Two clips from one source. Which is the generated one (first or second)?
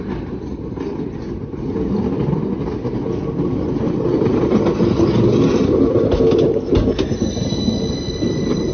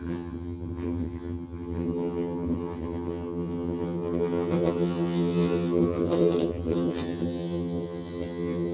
second